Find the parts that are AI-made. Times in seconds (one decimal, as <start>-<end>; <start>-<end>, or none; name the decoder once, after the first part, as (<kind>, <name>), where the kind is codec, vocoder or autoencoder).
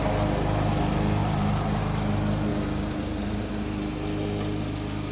1.2-1.8 (vocoder, BigVGAN v2); 2.5-3.5